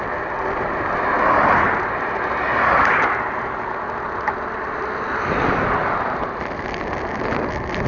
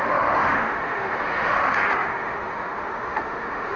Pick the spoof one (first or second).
second